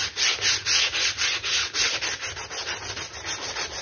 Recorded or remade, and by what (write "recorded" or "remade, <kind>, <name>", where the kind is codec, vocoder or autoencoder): recorded